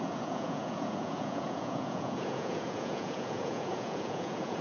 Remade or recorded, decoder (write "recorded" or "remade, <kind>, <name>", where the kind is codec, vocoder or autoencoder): remade, vocoder, Vocos